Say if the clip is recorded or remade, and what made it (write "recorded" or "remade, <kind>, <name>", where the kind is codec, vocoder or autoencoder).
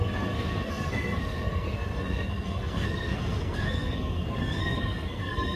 remade, codec, SNAC